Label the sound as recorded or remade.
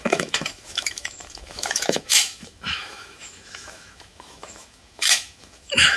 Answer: remade